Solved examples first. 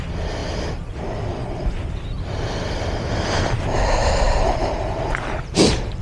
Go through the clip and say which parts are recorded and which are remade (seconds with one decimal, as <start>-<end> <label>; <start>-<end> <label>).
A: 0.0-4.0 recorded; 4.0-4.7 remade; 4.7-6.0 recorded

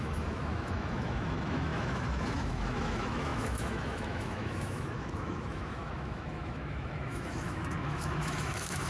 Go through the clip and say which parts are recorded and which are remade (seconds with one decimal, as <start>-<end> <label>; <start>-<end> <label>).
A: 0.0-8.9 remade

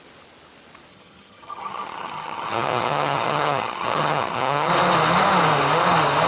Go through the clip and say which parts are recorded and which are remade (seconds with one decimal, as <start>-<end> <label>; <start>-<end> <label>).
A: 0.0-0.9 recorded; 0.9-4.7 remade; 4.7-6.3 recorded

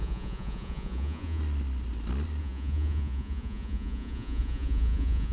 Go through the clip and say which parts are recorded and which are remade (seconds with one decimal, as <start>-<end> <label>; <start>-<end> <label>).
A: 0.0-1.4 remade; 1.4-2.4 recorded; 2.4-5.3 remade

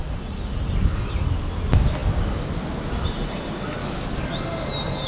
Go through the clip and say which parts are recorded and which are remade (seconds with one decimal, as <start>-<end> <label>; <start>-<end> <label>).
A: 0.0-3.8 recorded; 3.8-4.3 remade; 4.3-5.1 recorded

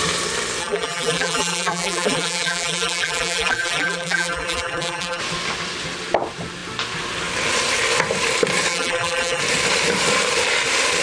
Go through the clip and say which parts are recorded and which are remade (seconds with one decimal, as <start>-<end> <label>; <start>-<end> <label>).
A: 0.0-0.6 recorded; 0.6-5.2 remade; 5.2-8.7 recorded; 8.7-9.4 remade; 9.4-11.0 recorded